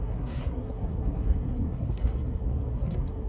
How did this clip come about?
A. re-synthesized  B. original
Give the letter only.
A